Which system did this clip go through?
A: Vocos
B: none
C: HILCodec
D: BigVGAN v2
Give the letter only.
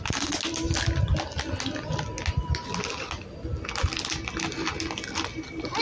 B